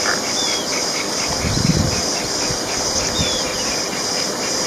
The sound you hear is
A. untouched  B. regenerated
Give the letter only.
A